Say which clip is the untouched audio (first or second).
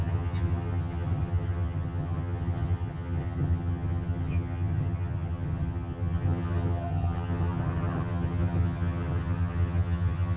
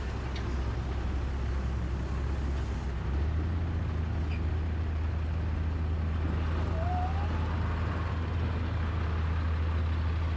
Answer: second